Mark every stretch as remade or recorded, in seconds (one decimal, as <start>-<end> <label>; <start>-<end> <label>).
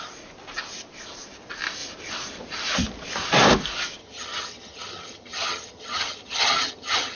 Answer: 0.0-4.0 recorded; 4.0-7.2 remade